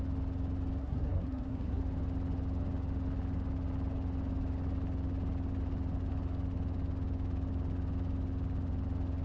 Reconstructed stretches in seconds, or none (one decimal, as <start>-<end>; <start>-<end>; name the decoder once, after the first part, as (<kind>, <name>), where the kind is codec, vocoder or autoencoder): 0.8-1.8 (codec, SNAC)